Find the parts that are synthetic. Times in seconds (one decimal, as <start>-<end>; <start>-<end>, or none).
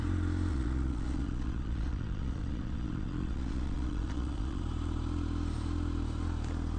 0.5-4.6